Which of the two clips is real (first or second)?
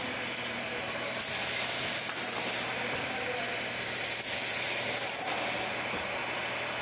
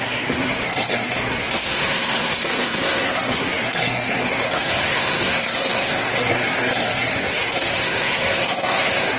first